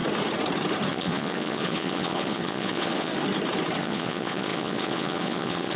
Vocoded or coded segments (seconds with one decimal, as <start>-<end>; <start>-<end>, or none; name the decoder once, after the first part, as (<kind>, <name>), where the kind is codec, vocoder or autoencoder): 0.9-3.1 (vocoder, Vocos); 3.8-5.8